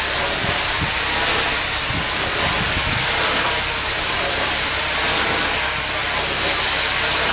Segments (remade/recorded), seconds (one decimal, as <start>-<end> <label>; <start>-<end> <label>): 0.0-0.4 recorded; 0.4-4.8 remade; 4.8-7.3 recorded